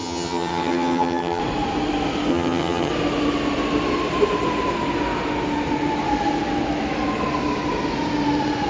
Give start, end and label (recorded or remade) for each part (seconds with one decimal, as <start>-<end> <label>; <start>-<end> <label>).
0.0-1.4 remade; 1.4-2.3 recorded; 2.3-2.9 remade; 2.9-8.7 recorded